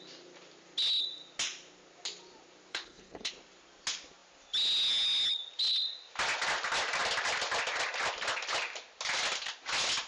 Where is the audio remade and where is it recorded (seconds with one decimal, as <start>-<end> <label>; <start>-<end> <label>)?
0.0-2.7 recorded; 2.7-3.3 remade; 3.3-10.1 recorded